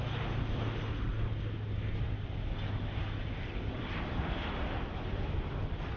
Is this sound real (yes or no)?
yes